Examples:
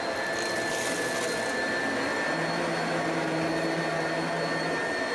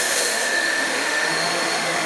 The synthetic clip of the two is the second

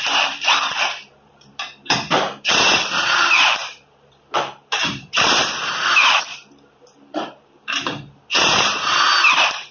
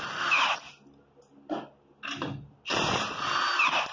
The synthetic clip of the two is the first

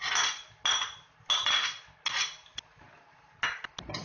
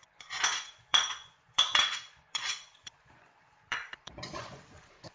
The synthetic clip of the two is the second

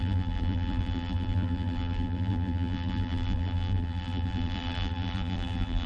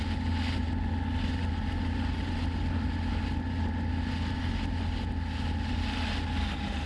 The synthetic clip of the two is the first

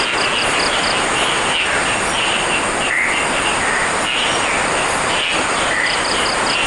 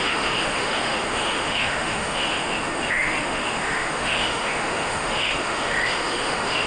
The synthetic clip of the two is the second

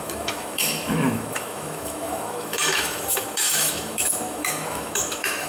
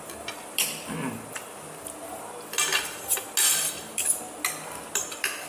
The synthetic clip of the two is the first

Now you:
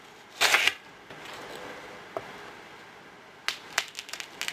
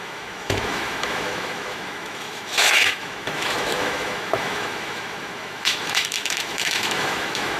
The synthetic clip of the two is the second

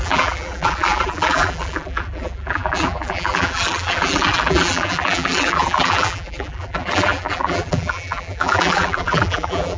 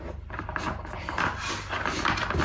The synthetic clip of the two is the first